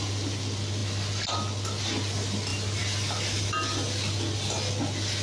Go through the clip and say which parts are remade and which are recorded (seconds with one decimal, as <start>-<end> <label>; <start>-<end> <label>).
0.0-5.2 recorded